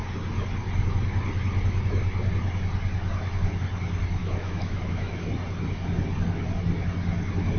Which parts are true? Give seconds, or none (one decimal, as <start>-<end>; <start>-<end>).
0.0-4.2; 5.3-7.6